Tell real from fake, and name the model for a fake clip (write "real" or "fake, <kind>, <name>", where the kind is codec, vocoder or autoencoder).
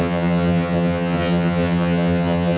fake, vocoder, HiFi-GAN